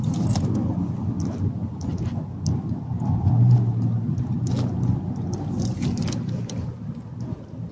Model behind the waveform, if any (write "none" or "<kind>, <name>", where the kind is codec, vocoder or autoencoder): none